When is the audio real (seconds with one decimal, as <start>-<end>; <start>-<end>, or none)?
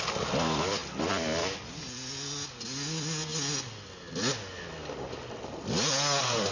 0.0-6.5